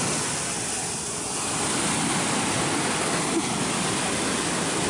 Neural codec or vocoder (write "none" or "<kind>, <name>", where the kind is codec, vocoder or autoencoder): none